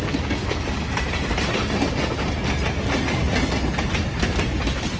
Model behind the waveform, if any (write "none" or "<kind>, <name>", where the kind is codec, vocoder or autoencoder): none